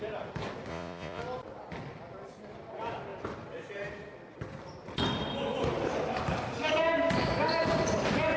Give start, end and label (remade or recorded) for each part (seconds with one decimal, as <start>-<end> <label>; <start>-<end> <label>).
0.0-0.7 recorded; 0.7-1.2 remade; 1.2-8.4 recorded